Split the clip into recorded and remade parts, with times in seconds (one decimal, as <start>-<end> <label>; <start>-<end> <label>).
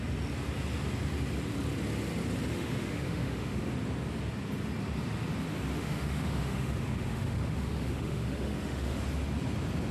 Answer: 0.0-2.5 recorded; 2.5-3.6 remade; 3.6-5.8 recorded; 5.8-9.0 remade; 9.0-9.9 recorded